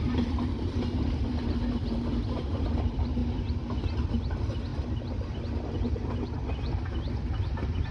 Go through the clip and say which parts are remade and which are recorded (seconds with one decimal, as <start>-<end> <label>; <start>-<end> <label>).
0.0-7.9 recorded